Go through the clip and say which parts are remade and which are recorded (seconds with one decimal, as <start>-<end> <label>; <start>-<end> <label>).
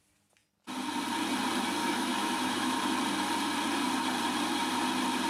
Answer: 0.0-1.8 recorded; 1.8-2.8 remade; 2.8-5.3 recorded